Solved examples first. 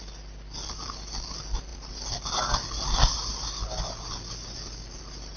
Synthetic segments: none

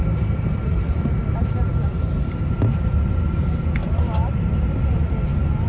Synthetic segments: 0.0-1.7 (vocoder, BigVGAN v2); 3.8-4.4

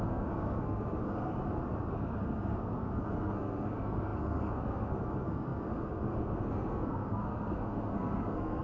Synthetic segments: 0.0-1.4 (codec, SNAC); 1.9-8.6

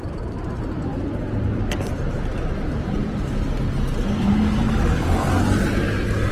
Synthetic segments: none

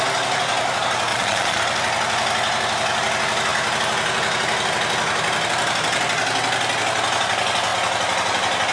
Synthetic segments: 1.1-1.6 (vocoder, Vocos)